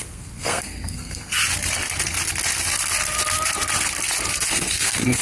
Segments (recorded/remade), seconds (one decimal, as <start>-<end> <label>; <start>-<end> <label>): 0.0-1.4 remade; 1.4-4.5 recorded; 4.5-5.2 remade